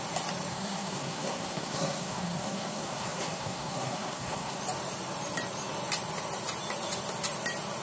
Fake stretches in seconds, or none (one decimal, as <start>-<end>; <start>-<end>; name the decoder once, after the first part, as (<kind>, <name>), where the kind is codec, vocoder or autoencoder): 0.5-4.6 (codec, SNAC)